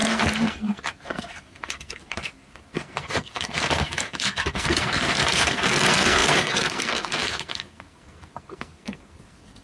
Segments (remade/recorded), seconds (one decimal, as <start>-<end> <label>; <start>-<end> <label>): 0.0-9.6 remade

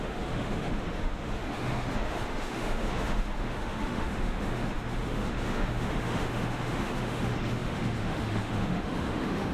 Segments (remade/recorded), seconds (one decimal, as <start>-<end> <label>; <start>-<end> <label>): 0.0-9.5 remade

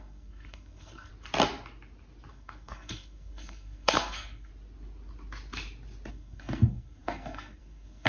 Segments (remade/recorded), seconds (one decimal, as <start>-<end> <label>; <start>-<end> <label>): 0.0-1.1 remade; 1.1-2.3 recorded; 2.3-4.5 remade; 4.5-6.1 recorded; 6.1-8.1 remade